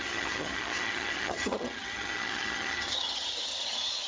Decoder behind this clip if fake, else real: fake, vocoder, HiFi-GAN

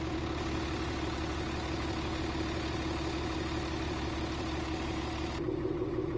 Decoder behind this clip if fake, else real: real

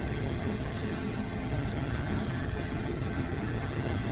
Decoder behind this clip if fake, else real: fake, vocoder, HiFi-GAN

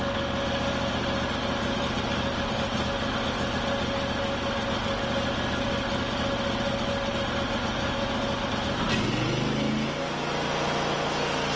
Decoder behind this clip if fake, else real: real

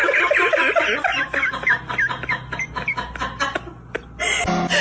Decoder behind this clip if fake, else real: real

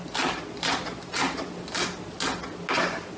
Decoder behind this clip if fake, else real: real